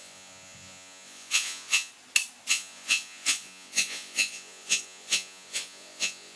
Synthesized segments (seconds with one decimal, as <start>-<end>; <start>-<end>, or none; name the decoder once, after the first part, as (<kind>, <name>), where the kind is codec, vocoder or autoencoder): 0.0-1.9 (vocoder, Vocos); 2.5-6.4